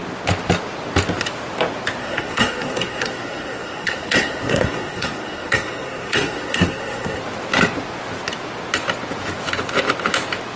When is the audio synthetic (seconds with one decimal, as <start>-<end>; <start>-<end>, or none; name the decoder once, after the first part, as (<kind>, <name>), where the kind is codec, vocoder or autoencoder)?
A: 2.0-7.2 (codec, SNAC)